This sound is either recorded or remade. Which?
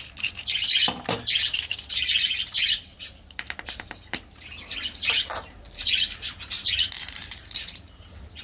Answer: remade